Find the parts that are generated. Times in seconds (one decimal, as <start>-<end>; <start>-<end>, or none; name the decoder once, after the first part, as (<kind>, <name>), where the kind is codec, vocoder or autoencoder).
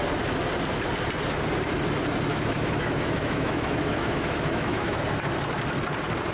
2.3-5.0 (autoencoder, DAC-VAE)